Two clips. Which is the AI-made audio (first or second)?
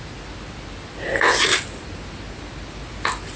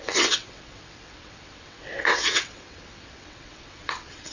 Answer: second